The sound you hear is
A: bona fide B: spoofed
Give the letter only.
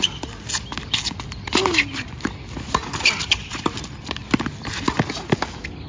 A